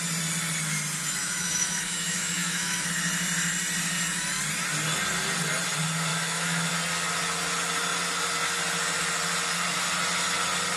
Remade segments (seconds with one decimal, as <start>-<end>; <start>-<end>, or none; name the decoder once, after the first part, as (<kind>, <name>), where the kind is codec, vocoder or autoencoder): 1.2-2.9 (autoencoder, DAC-VAE); 6.1-6.7

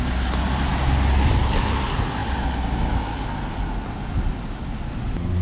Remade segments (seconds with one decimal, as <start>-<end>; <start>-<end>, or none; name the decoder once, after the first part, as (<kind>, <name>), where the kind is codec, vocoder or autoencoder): none